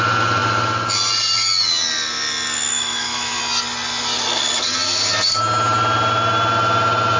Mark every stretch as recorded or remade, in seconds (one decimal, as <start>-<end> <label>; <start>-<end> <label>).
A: 0.0-2.7 recorded; 2.7-3.4 remade; 3.4-7.2 recorded